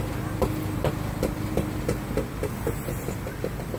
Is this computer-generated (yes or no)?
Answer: no